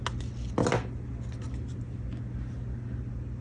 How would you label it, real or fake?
real